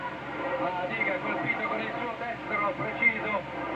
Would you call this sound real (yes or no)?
yes